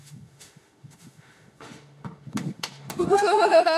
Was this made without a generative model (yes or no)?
no